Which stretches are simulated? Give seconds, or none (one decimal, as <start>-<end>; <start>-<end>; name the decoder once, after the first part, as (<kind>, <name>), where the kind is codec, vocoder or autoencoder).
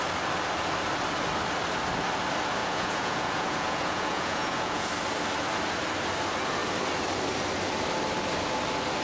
2.6-4.9 (vocoder, Vocos)